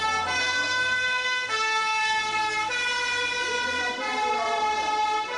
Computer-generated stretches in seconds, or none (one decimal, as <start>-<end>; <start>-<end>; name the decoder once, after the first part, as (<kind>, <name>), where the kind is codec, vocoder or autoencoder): 0.4-2.2 (codec, SNAC)